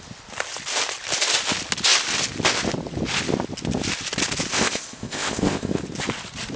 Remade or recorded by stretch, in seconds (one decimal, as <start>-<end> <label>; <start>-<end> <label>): 0.0-4.5 recorded; 4.5-5.8 remade; 5.8-6.6 recorded